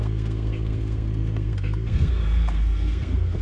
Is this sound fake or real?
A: fake